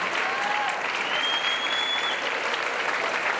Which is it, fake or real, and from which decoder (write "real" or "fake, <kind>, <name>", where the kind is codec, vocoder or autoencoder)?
real